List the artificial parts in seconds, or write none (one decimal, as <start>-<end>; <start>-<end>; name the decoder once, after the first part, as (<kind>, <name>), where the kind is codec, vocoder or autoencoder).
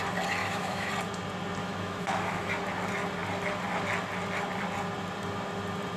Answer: 0.4-0.9 (autoencoder, DAC-VAE); 1.6-2.5